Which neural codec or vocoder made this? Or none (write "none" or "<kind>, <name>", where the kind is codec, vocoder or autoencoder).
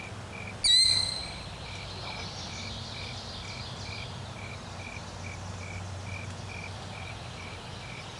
none